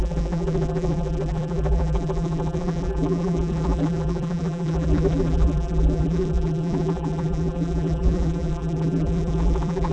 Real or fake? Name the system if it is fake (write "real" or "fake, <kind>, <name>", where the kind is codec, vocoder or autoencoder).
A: fake, vocoder, BigVGAN v2